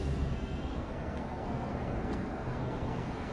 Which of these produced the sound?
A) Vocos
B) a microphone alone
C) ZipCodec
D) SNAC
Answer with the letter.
D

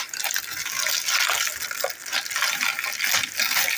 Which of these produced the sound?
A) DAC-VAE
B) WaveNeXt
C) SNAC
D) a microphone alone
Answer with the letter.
D